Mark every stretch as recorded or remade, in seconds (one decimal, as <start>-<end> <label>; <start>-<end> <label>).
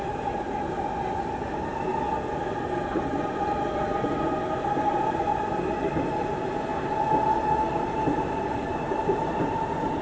0.0-1.9 remade; 1.9-2.7 recorded; 2.7-6.7 remade; 6.7-7.7 recorded; 7.7-10.0 remade